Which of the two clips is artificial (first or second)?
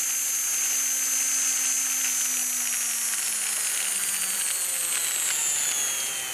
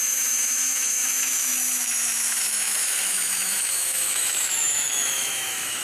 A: second